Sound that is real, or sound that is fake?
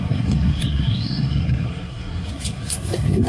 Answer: fake